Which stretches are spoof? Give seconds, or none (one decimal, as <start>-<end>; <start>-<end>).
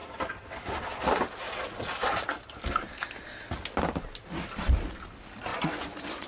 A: 5.5-6.3